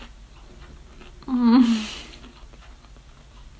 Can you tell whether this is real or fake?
real